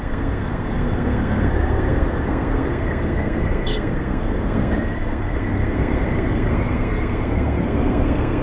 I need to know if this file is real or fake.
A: fake